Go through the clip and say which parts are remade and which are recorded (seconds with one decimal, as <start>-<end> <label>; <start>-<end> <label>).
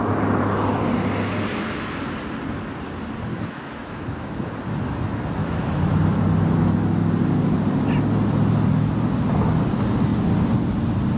0.0-3.3 recorded; 3.3-4.5 remade; 4.5-5.4 recorded; 5.4-6.1 remade; 6.1-11.2 recorded